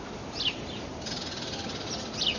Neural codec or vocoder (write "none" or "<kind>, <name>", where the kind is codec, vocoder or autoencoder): none